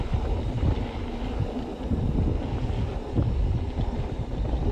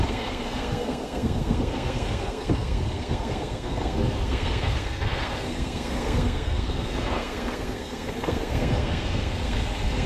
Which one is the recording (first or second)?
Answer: first